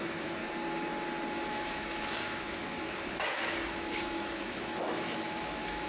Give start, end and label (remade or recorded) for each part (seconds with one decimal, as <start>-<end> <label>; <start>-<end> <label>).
0.0-0.4 remade; 0.4-1.3 recorded; 1.3-5.9 remade